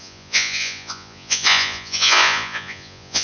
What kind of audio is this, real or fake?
fake